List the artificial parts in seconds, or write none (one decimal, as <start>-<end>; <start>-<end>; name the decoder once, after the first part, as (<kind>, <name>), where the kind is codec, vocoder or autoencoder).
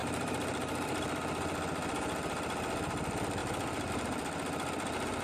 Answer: 0.0-1.2 (vocoder, BigVGAN v2); 3.4-3.9